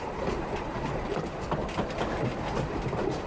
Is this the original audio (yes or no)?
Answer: yes